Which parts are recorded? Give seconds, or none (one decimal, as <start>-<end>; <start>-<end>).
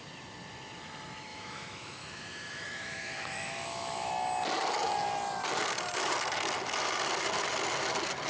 0.0-1.3; 4.1-8.3